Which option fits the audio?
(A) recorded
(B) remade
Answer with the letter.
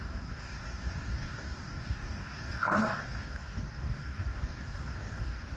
B